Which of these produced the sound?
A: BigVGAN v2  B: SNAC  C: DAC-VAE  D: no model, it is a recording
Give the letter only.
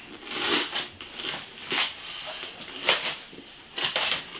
D